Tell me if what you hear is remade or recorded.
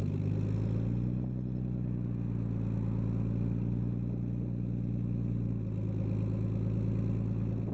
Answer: recorded